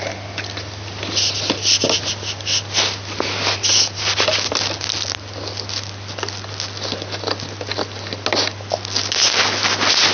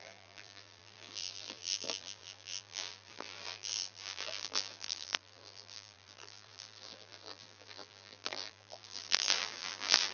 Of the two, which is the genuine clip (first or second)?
first